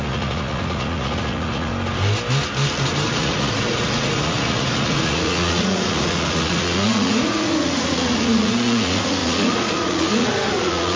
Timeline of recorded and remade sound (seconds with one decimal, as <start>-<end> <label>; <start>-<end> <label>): 0.0-1.7 remade; 1.7-3.1 recorded; 3.1-11.0 remade

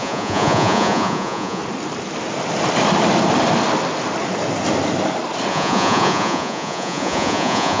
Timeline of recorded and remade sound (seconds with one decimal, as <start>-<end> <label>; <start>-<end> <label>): 0.0-1.6 remade; 1.6-5.5 recorded; 5.5-7.8 remade

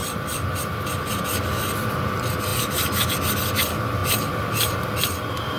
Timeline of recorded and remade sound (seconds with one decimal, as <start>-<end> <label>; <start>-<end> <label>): 0.0-1.1 remade; 1.1-2.5 recorded; 2.5-3.1 remade; 3.1-5.6 recorded